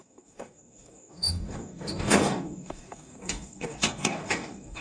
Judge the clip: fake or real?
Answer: fake